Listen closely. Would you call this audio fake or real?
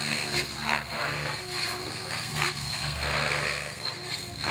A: fake